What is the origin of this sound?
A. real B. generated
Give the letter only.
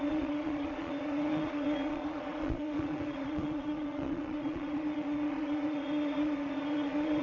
B